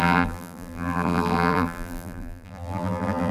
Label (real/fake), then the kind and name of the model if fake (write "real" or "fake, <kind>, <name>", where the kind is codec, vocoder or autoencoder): fake, vocoder, BigVGAN v2